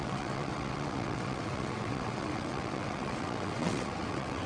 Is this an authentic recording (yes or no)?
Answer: no